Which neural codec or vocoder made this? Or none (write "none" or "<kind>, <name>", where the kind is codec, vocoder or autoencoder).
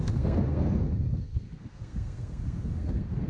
codec, SNAC